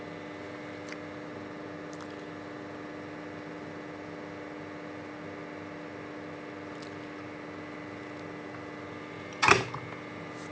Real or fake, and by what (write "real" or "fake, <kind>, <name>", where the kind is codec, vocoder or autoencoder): real